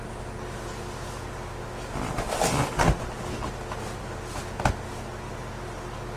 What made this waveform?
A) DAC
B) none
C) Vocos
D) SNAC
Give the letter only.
B